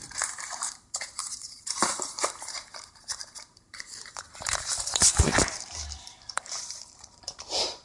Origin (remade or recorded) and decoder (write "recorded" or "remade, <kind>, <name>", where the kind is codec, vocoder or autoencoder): remade, vocoder, BigVGAN v2